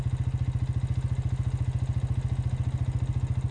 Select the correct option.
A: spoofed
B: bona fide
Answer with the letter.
B